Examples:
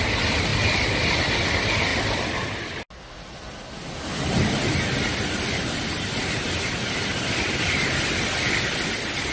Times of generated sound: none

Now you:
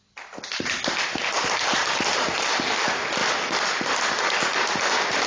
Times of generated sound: none

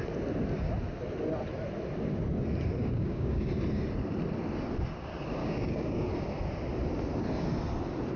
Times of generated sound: 2.8-3.5 (codec, DAC); 5.4-6.1

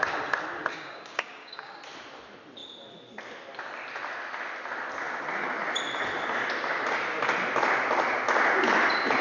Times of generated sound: 0.7-1.8 (codec, DAC)

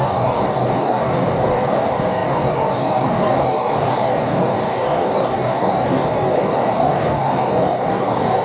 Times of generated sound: 0.0-8.4 (codec, DAC)

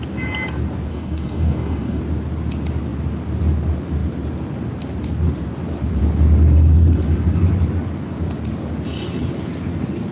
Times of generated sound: 0.9-2.0 (codec, DAC)

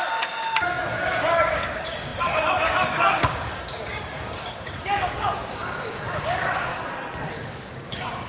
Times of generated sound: 0.0-6.7 (codec, DAC); 7.3-8.3

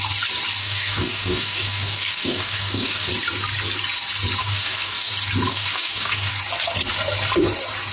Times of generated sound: 0.6-3.1 (codec, DAC); 4.4-5.1; 5.5-6.3